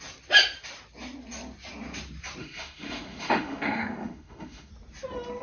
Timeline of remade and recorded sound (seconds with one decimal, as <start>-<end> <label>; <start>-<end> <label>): 0.0-2.4 recorded; 2.4-4.7 remade; 4.7-5.4 recorded